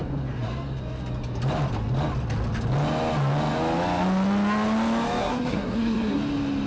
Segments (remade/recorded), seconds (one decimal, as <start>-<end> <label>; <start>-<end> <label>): 0.0-5.2 recorded; 5.2-6.2 remade; 6.2-6.7 recorded